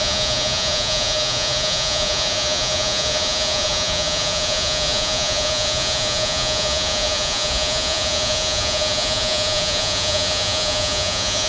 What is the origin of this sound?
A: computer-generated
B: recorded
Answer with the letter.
A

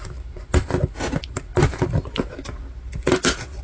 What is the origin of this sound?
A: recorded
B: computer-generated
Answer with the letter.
A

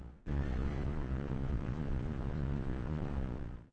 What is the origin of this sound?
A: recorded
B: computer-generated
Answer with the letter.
B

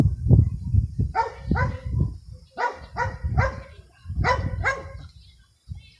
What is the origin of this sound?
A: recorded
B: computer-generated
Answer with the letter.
A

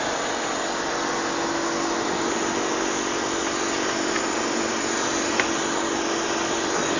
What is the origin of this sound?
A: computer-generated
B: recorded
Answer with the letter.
B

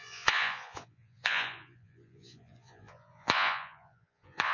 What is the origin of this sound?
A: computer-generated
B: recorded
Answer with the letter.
A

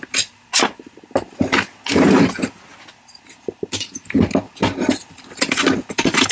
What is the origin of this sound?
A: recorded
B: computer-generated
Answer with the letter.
A